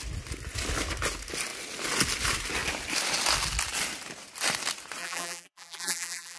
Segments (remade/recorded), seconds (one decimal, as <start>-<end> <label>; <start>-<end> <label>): 0.0-5.0 recorded; 5.0-6.4 remade